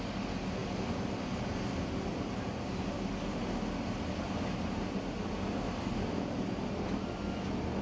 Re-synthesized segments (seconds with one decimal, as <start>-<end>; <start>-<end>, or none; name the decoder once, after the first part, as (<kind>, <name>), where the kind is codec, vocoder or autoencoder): none